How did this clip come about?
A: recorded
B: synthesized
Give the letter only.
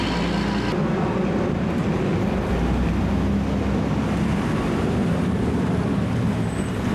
A